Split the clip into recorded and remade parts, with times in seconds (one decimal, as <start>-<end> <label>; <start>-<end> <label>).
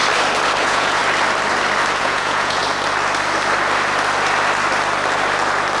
0.0-0.6 recorded; 0.6-1.0 remade; 1.0-2.0 recorded; 2.0-2.6 remade; 2.6-5.8 recorded